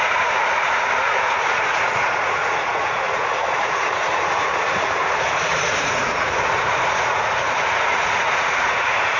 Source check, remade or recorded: remade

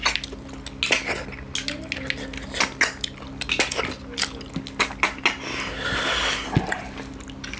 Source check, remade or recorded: recorded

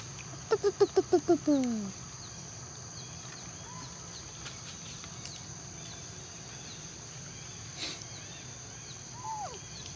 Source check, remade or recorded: recorded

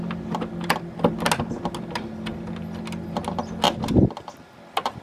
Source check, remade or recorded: recorded